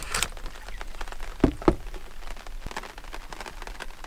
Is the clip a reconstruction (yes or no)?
no